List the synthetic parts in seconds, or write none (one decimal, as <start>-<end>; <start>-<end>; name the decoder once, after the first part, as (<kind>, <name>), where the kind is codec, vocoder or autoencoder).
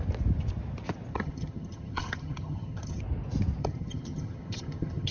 1.1-3.0 (vocoder, HiFi-GAN); 3.6-5.1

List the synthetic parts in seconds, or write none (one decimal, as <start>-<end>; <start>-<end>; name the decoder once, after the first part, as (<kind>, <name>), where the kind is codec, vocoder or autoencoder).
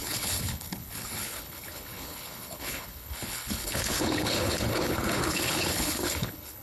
0.0-6.6 (codec, HILCodec)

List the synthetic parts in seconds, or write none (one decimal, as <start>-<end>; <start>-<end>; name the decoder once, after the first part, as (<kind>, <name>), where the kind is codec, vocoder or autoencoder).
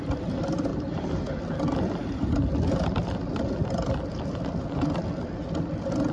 0.7-1.4 (vocoder, BigVGAN v2)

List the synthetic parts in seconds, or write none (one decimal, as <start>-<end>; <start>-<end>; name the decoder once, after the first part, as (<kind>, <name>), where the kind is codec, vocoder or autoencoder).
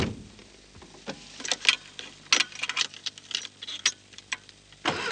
none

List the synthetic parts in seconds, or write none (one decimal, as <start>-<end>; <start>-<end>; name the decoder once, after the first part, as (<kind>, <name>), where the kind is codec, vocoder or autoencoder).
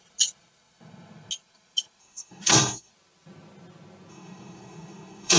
2.0-2.9 (codec, SNAC); 4.1-5.4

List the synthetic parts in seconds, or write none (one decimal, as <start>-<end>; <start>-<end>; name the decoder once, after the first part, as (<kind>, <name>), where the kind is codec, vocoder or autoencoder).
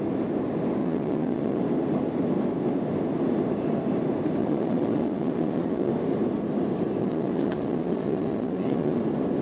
0.8-1.6 (vocoder, Vocos); 4.4-5.9; 7.0-9.0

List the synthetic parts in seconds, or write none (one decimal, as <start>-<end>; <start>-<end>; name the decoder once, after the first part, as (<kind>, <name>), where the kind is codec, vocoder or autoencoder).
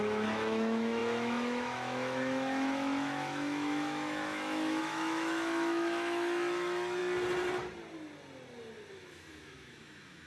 0.0-7.0 (autoencoder, DAC-VAE); 8.9-10.3